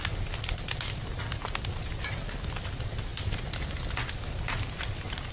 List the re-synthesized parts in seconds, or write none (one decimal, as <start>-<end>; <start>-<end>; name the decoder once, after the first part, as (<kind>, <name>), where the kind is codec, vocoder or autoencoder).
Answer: none